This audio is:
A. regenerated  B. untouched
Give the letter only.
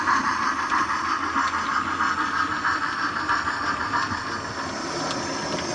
B